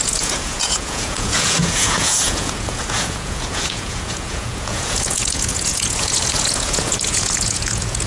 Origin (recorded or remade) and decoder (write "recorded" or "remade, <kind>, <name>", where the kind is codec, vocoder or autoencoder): remade, vocoder, Vocos